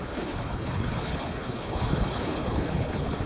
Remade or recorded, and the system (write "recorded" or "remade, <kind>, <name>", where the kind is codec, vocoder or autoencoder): remade, codec, HILCodec